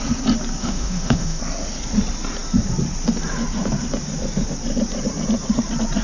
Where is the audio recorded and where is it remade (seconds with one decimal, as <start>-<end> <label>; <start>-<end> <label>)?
0.0-0.6 recorded; 0.6-1.4 remade; 1.4-6.0 recorded